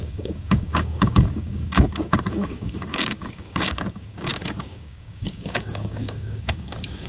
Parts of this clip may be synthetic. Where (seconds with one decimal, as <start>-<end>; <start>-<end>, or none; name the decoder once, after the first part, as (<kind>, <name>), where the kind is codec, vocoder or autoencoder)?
0.0-7.1 (codec, DAC)